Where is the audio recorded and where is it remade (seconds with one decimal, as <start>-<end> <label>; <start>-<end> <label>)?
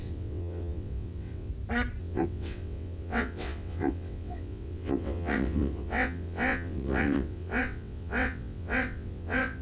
0.0-1.5 remade; 1.5-2.0 recorded; 2.0-9.6 remade